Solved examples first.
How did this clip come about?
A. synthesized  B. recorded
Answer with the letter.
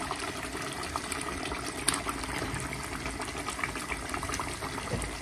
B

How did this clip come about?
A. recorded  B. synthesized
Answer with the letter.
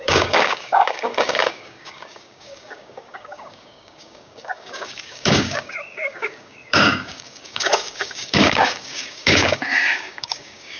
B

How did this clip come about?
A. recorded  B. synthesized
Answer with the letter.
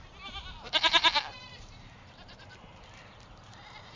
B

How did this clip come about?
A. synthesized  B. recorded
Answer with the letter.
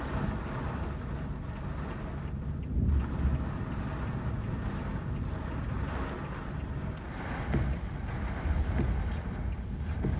B